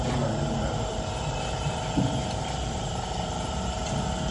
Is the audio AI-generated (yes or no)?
yes